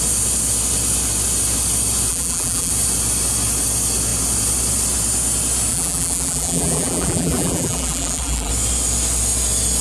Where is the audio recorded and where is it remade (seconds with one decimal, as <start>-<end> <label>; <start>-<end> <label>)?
0.0-2.1 recorded; 2.1-2.7 remade; 2.7-5.7 recorded; 5.7-8.5 remade; 8.5-9.8 recorded